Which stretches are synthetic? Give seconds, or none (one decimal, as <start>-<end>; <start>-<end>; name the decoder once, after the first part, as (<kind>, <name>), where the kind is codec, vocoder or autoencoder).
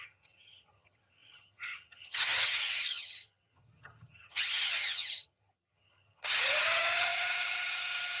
0.0-8.2 (vocoder, HiFi-GAN)